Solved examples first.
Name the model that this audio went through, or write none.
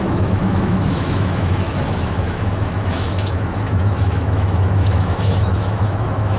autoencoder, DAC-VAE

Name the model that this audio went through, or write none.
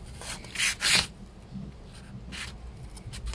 none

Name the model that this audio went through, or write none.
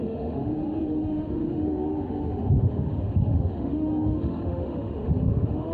autoencoder, DAC-VAE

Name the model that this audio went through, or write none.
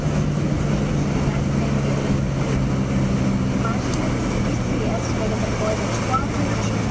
none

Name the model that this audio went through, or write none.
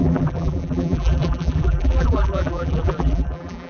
vocoder, BigVGAN v2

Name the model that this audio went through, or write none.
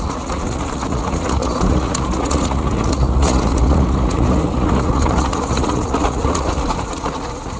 vocoder, Vocos